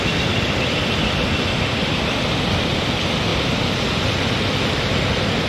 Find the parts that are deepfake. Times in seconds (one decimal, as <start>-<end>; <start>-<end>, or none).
none

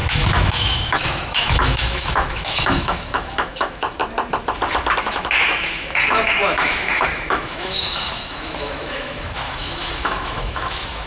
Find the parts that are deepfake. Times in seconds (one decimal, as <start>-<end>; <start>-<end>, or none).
0.0-4.0; 5.0-11.1

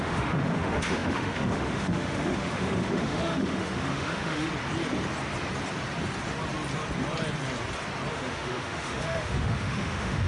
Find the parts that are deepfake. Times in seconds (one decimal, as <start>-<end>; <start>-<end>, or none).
0.0-4.5; 8.1-10.3

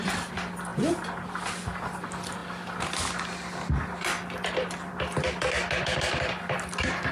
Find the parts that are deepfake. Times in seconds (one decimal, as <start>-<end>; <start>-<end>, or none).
none

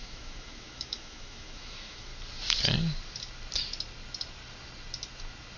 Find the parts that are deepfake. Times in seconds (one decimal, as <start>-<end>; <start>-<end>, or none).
0.0-2.1